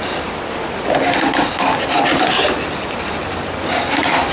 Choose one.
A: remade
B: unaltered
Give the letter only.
B